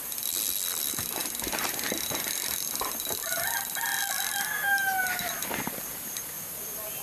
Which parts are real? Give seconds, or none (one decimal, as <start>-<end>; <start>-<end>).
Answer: 0.0-7.0